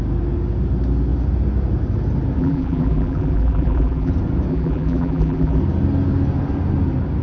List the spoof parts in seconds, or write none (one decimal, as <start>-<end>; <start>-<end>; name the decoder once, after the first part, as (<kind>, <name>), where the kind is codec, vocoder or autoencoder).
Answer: 2.4-4.1 (vocoder, BigVGAN v2); 4.5-5.6